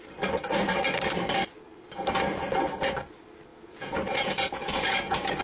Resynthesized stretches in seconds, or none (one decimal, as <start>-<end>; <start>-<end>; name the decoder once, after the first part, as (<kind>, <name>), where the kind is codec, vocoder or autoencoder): 3.5-5.4 (vocoder, Vocos)